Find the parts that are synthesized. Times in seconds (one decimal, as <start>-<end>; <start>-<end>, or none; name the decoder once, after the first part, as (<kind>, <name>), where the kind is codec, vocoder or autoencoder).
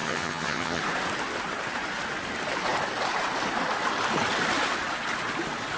0.0-0.8 (vocoder, HiFi-GAN)